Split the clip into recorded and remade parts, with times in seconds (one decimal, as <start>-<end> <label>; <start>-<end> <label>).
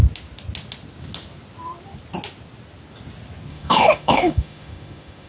0.0-3.5 recorded; 3.5-5.3 remade